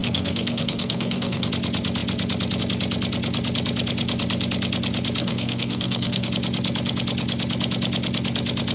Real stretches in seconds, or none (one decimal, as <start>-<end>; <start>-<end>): 1.5-5.2; 6.3-8.7